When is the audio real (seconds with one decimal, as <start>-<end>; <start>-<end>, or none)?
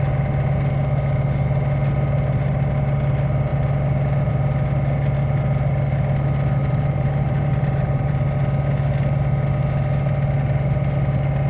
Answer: 0.0-6.6; 8.1-11.5